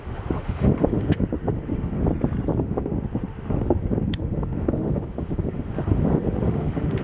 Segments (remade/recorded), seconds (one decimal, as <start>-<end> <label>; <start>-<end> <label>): 0.0-2.0 remade; 2.0-2.6 recorded; 2.6-7.0 remade